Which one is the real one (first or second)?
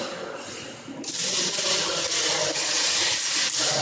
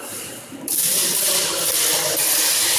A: first